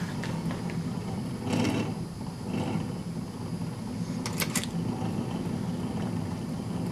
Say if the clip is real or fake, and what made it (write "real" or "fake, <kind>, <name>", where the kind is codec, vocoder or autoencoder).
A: real